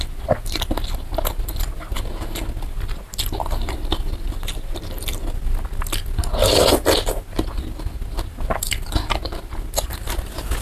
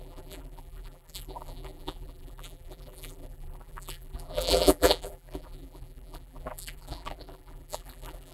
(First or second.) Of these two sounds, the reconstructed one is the second